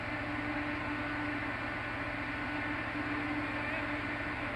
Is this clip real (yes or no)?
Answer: yes